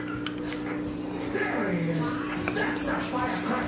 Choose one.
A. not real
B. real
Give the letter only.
B